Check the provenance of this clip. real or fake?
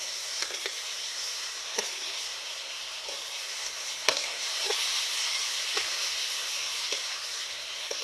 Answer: fake